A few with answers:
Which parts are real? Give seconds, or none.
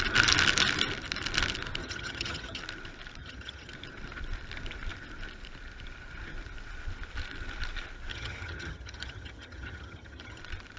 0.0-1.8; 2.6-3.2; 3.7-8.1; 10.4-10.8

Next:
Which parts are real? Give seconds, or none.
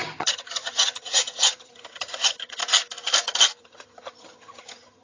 2.6-3.6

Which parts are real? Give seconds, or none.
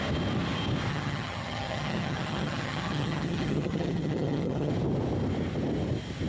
0.0-0.9; 4.7-6.3